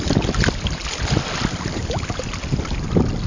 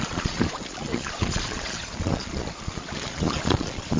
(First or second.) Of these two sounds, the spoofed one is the second